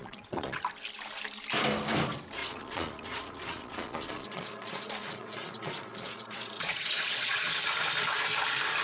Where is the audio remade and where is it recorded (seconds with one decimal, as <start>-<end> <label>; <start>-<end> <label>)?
0.0-0.6 remade; 0.6-2.4 recorded; 2.4-7.6 remade; 7.6-8.8 recorded